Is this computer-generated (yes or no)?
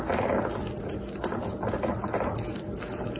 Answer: no